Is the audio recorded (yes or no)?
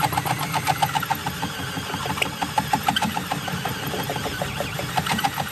yes